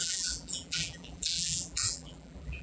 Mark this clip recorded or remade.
remade